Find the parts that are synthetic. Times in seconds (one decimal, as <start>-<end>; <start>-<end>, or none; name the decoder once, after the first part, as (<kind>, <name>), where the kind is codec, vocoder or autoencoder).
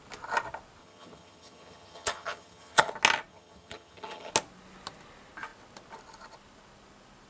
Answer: 0.8-2.9 (vocoder, HiFi-GAN); 3.3-4.3